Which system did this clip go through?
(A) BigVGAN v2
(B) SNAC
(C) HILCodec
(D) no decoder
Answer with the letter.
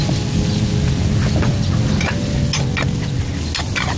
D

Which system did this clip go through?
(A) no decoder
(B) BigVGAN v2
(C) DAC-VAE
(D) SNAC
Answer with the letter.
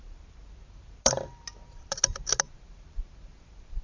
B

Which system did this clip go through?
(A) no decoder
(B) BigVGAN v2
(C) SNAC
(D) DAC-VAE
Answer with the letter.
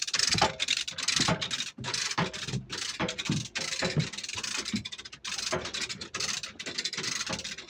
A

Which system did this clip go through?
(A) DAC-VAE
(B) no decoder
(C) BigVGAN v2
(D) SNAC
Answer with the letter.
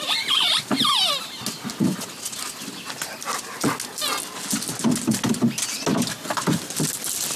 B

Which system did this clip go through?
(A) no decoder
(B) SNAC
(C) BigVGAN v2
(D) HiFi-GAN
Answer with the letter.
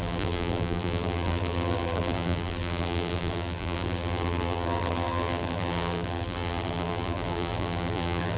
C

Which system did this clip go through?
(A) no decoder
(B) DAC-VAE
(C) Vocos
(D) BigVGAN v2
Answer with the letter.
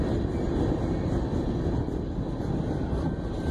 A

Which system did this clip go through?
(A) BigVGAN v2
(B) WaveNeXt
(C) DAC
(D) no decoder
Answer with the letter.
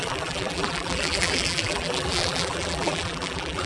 A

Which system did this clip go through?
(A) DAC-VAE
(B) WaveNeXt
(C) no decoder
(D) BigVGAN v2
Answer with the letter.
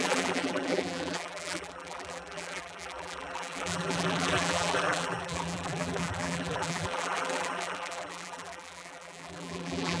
D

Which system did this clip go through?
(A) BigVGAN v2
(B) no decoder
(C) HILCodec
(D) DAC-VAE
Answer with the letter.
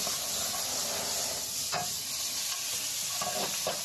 B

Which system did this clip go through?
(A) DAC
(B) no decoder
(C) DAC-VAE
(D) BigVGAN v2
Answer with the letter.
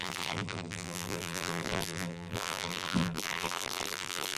D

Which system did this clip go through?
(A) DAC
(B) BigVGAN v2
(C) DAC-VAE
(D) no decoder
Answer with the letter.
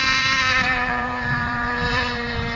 B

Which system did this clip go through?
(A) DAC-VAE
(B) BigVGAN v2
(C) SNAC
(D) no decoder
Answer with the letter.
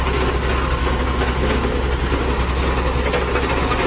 D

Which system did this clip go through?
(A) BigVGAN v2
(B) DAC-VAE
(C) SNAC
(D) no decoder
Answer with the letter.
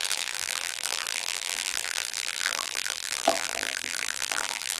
A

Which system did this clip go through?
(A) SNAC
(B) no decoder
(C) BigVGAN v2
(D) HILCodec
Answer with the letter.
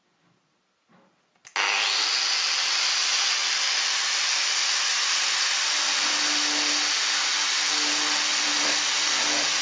B